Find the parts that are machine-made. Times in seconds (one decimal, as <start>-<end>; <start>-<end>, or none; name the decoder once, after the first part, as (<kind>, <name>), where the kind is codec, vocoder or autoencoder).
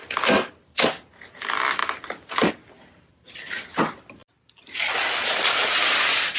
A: 0.0-0.5 (vocoder, BigVGAN v2); 1.8-2.5; 4.2-5.7